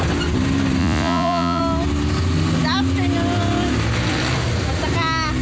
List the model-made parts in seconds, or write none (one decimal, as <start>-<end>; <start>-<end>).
0.8-1.6